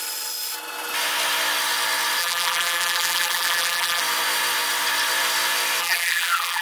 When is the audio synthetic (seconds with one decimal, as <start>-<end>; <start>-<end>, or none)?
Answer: 2.2-4.0; 5.8-6.6